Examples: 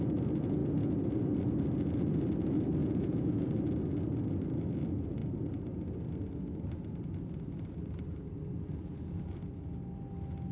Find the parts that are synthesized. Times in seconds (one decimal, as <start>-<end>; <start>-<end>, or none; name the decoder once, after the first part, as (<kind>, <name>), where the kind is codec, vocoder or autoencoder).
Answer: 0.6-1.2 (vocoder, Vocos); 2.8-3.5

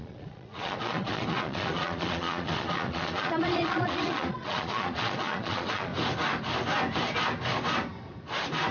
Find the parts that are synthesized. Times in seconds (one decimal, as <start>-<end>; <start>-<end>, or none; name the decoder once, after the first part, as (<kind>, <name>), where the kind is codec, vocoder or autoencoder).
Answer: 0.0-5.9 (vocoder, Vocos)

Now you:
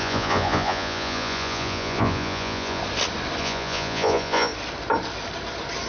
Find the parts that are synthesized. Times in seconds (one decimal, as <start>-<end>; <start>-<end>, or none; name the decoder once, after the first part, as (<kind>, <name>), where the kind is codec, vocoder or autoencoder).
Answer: 0.0-2.8 (vocoder, Vocos); 3.4-4.5